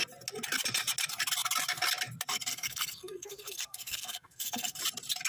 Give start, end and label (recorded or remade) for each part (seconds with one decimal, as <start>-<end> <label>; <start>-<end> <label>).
0.0-2.5 recorded; 2.5-4.8 remade; 4.8-5.3 recorded